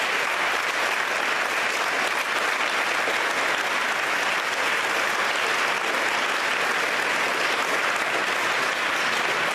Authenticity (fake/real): real